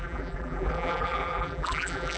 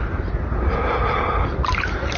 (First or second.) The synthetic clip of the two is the first